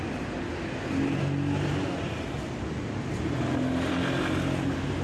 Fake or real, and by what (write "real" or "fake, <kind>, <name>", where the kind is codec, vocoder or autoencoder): real